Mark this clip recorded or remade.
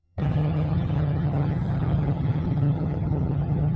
remade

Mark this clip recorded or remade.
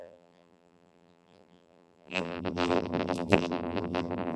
remade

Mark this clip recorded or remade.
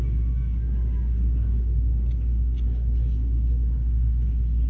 recorded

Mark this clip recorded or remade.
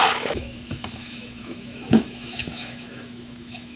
remade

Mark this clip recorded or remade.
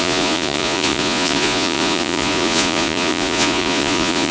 remade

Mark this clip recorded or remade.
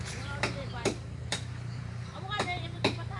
remade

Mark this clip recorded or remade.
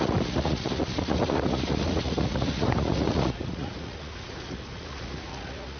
remade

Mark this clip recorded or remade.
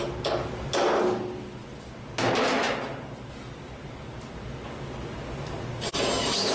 recorded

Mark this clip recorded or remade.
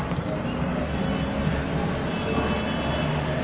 recorded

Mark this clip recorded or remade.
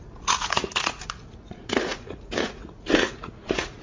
remade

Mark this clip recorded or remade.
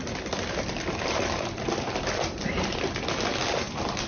remade